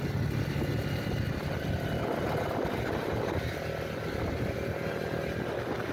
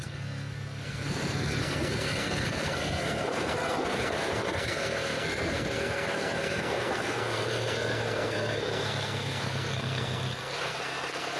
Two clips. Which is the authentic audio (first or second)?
first